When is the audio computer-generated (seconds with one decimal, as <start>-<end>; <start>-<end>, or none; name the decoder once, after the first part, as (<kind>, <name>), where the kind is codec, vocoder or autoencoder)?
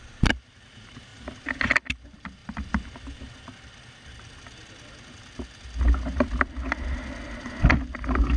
0.0-1.1 (vocoder, BigVGAN v2); 2.0-2.4; 7.4-8.4